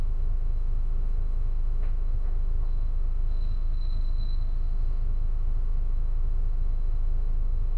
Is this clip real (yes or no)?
no